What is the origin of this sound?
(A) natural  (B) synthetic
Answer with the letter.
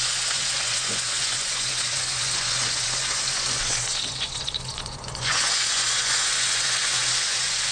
B